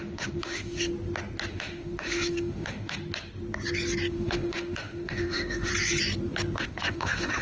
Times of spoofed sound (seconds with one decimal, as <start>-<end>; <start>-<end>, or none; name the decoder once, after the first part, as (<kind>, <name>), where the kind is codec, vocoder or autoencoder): 0.0-0.9 (autoencoder, DAC-VAE); 1.5-3.0; 4.1-5.7; 6.6-7.4